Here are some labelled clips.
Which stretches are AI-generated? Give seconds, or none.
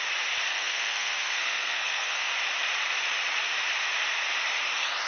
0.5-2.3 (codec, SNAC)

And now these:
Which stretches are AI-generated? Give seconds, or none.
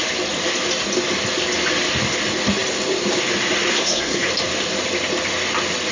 3.7-4.3 (codec, SNAC)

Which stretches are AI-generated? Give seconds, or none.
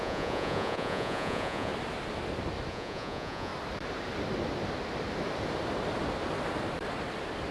0.0-1.7 (vocoder, Vocos); 2.7-3.5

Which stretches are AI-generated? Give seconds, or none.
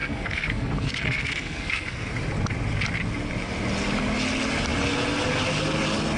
0.0-2.1 (codec, SNAC)